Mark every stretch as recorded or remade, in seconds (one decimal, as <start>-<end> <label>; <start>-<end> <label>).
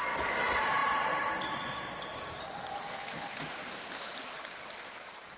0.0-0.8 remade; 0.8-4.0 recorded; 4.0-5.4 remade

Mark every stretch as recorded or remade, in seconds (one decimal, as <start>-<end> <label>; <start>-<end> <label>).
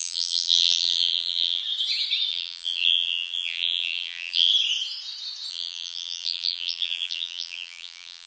0.0-1.6 remade; 1.6-2.3 recorded; 2.3-4.5 remade; 4.5-5.5 recorded; 5.5-8.3 remade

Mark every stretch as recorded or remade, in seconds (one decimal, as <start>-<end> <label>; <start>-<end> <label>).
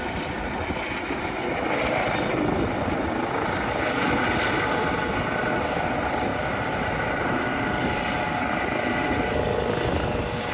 0.0-6.3 recorded; 6.3-7.6 remade; 7.6-10.5 recorded